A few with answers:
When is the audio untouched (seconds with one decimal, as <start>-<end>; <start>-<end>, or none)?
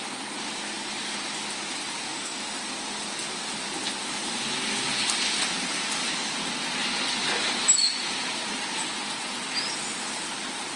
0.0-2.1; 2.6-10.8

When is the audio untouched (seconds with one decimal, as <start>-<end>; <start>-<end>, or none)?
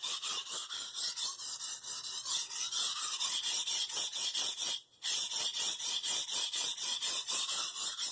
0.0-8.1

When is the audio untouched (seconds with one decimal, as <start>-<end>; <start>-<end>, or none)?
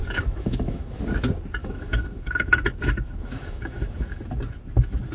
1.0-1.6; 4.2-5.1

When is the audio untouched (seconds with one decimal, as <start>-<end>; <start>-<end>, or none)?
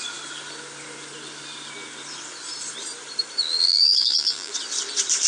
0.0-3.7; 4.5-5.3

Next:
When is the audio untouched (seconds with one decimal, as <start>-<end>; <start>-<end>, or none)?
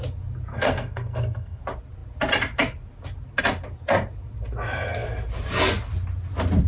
0.0-0.5; 1.6-6.7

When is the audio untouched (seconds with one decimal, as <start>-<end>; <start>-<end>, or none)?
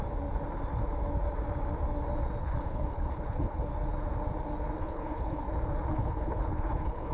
0.0-2.4; 3.7-4.8; 5.4-5.9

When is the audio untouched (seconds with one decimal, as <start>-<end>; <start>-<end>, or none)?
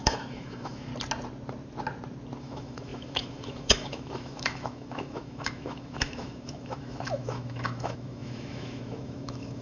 0.9-2.4